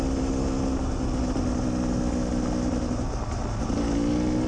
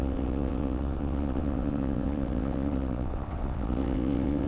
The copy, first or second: second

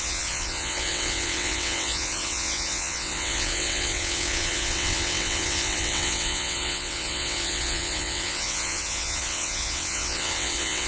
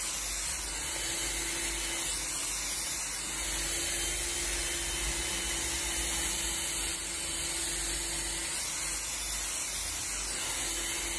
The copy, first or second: first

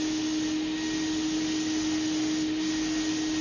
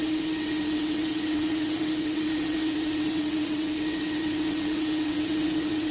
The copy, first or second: second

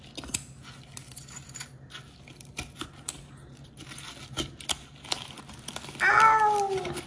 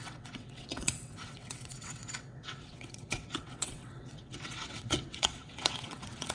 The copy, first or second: second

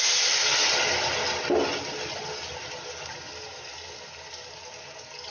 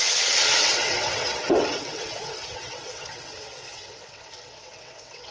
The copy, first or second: second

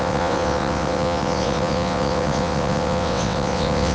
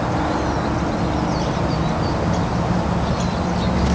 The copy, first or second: first